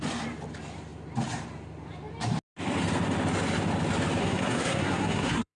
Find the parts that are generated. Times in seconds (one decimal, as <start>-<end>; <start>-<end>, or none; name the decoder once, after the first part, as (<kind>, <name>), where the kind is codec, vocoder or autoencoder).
4.2-5.6 (codec, SNAC)